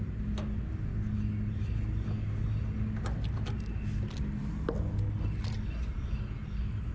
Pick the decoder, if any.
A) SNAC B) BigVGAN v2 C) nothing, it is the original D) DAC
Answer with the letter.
C